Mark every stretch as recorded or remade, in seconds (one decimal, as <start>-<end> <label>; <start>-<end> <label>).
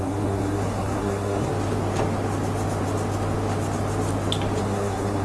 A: 0.0-1.5 remade; 1.5-4.6 recorded; 4.6-5.2 remade